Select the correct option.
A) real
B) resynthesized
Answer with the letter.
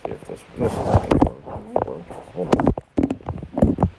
A